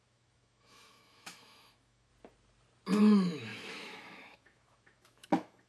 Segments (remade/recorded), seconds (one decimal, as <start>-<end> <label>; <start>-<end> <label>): 0.0-2.1 remade; 2.1-3.0 recorded; 3.0-5.7 remade